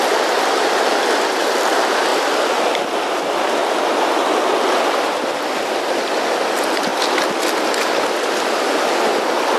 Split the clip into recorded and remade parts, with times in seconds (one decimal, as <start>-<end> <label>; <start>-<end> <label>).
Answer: 0.0-2.1 remade; 2.1-2.7 recorded; 2.7-3.6 remade; 3.6-6.3 recorded; 6.3-6.9 remade; 6.9-8.4 recorded; 8.4-9.6 remade